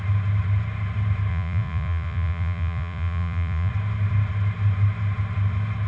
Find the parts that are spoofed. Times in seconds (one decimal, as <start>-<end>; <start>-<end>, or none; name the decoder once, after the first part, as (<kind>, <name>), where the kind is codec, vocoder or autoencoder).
1.3-3.7 (vocoder, Vocos)

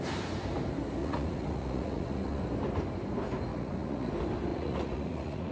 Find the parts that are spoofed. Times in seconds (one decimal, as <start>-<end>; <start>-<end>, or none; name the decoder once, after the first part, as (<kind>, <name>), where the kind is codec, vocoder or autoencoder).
1.0-2.4 (vocoder, Vocos); 3.5-4.1; 4.5-5.5

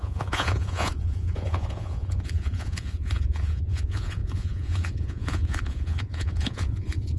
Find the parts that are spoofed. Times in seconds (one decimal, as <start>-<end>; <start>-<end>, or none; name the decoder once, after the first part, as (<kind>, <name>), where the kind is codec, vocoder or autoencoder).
0.0-7.2 (vocoder, Vocos)

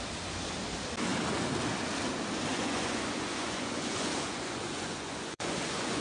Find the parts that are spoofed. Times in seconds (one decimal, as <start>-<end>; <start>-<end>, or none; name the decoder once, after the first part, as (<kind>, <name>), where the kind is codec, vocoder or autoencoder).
2.5-6.0 (vocoder, Vocos)

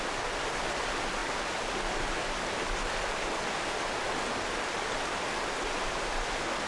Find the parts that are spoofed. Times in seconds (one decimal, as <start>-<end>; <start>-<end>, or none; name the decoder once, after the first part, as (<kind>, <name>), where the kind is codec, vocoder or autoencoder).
none

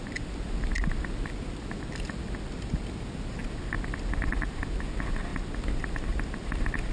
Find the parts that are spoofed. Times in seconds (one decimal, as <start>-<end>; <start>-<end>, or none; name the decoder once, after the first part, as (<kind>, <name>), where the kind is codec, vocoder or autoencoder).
none